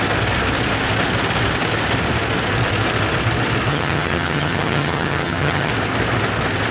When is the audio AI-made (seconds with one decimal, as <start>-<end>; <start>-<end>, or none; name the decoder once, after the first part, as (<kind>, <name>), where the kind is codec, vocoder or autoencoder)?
3.7-5.7 (vocoder, HiFi-GAN)